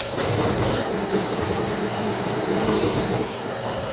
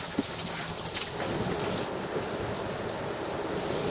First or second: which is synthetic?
first